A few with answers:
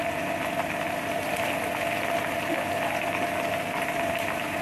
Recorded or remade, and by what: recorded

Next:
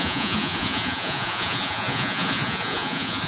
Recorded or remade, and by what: remade, vocoder, Vocos